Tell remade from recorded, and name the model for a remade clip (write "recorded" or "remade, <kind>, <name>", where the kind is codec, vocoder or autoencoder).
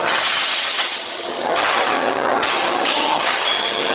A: remade, vocoder, HiFi-GAN